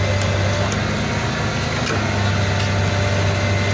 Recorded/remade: recorded